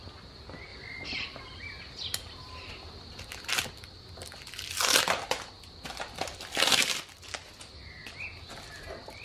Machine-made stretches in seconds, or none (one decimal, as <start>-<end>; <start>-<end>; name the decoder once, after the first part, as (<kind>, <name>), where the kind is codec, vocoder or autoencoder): none